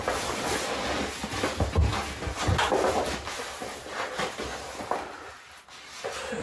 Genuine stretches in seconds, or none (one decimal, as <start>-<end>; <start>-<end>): 0.0-6.4